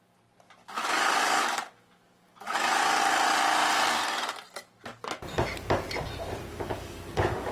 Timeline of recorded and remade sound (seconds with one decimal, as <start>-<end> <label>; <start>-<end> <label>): 0.0-0.6 recorded; 0.6-3.0 remade; 3.0-6.5 recorded; 6.5-7.5 remade